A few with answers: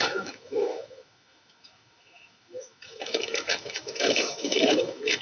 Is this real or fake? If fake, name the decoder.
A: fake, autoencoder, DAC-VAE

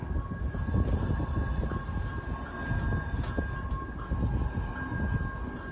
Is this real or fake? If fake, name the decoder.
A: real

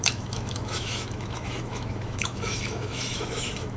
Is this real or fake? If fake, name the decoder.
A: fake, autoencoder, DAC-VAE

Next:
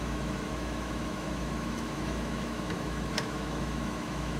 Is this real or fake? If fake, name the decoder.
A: fake, autoencoder, DAC-VAE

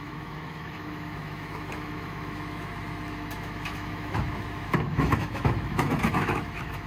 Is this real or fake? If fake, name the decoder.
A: fake, autoencoder, DAC-VAE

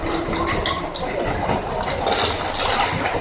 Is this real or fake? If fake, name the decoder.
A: real